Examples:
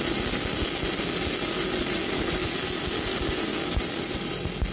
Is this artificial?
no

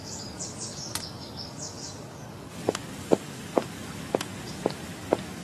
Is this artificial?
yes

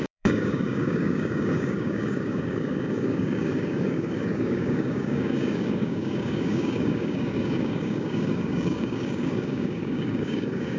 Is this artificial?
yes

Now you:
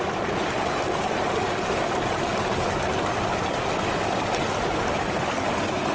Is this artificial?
no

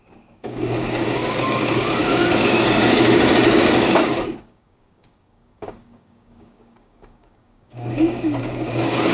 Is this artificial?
yes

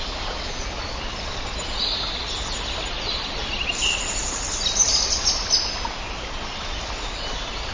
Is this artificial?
no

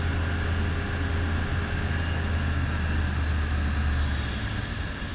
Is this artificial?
no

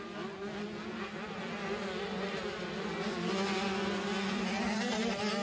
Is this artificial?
no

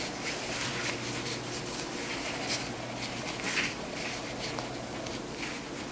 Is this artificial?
no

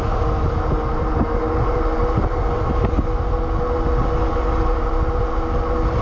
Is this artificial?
no